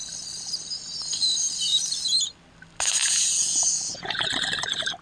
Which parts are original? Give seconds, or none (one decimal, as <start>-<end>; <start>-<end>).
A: 0.0-3.0; 4.3-5.0